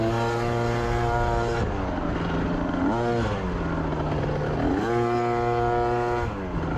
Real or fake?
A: real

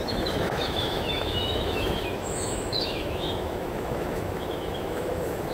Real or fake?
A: fake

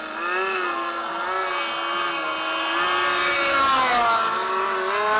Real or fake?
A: real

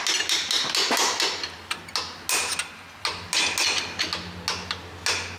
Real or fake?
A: real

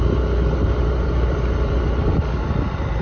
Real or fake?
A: real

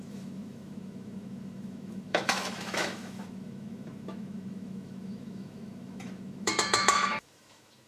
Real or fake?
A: fake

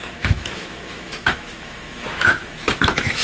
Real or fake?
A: fake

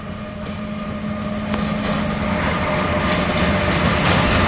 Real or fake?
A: real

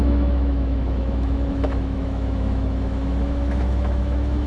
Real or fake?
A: fake